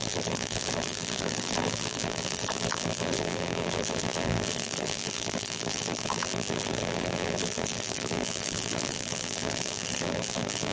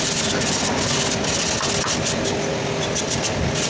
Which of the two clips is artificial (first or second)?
first